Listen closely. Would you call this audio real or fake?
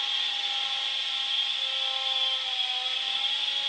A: real